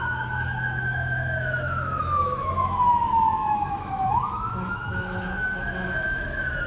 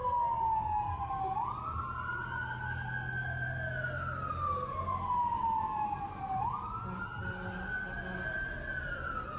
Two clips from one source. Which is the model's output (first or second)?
first